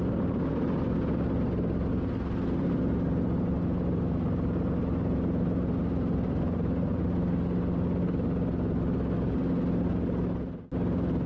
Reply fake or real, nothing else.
real